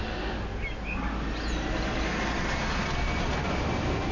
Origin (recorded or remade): recorded